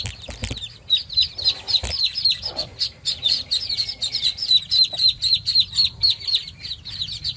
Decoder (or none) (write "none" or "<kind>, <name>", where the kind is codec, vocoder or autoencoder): none